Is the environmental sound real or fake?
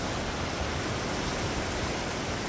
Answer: real